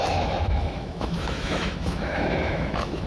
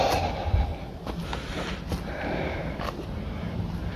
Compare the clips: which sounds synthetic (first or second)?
first